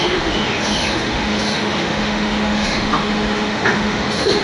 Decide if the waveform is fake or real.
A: fake